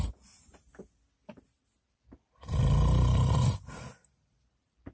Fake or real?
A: real